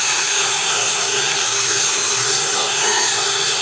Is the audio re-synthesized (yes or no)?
yes